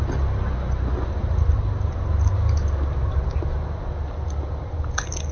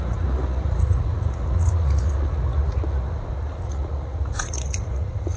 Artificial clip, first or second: second